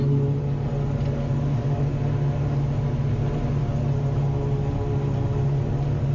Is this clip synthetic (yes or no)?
no